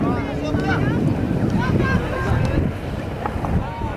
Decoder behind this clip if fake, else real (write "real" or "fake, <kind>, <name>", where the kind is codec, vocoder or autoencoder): real